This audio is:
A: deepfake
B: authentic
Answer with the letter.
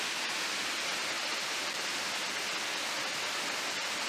A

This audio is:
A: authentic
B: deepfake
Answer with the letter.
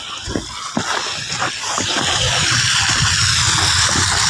A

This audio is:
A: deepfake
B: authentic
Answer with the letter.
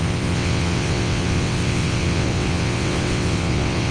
A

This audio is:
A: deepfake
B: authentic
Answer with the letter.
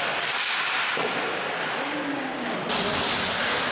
B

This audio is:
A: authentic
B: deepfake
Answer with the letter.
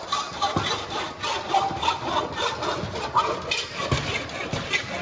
A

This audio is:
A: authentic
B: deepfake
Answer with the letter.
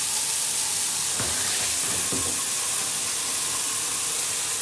A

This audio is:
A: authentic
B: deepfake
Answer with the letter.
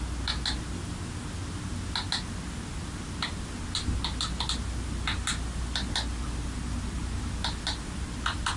A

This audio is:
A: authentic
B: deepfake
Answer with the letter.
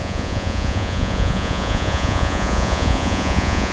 B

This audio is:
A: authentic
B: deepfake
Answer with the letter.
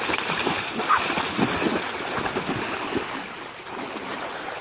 A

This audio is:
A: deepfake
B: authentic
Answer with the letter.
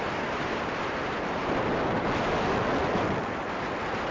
B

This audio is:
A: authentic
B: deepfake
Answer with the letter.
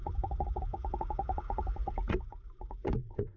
B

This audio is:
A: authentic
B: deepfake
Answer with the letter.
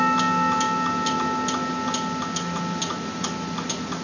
A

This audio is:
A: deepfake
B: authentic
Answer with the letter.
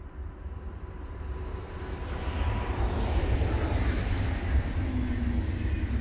B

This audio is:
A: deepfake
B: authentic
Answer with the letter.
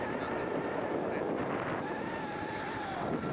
B